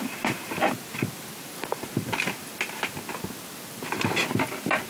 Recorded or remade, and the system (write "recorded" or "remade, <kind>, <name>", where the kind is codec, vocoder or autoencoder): recorded